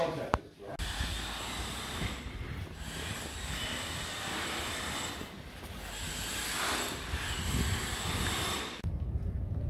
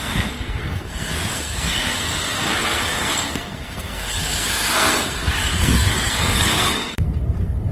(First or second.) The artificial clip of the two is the second